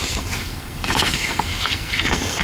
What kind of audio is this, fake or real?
fake